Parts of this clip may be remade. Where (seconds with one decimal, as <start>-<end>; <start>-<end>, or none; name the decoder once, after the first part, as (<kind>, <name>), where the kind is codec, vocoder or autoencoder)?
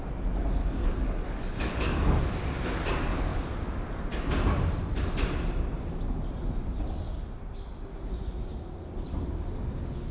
0.6-2.2 (codec, DAC)